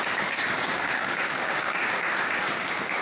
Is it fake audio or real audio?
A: fake